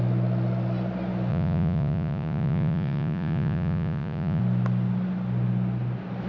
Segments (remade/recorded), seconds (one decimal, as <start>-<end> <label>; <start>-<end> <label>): 0.0-1.3 recorded; 1.3-4.4 remade; 4.4-6.3 recorded